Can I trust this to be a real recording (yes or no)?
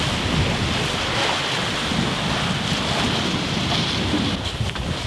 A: yes